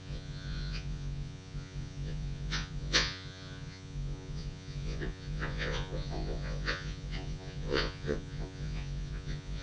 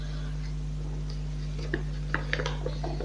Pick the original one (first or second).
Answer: second